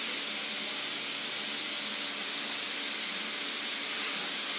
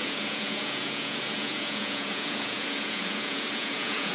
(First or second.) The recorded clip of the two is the first